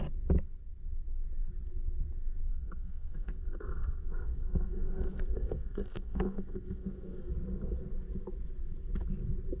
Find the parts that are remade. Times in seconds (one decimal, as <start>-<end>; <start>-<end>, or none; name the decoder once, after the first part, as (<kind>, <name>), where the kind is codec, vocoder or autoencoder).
2.5-7.3 (codec, SNAC)